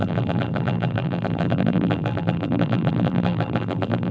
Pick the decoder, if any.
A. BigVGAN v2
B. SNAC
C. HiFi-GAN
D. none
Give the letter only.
A